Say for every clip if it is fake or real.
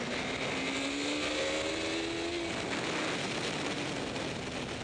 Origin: real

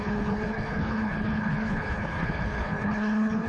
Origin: fake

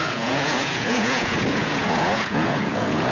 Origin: fake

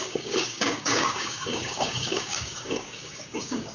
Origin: fake